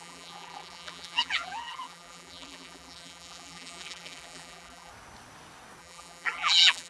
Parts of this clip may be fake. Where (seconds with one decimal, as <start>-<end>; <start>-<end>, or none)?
0.0-4.9; 5.8-6.9